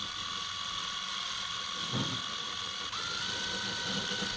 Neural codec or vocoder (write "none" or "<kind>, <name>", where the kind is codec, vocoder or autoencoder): none